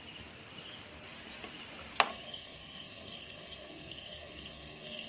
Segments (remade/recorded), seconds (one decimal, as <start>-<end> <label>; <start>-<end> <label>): 0.0-2.1 recorded; 2.1-5.1 remade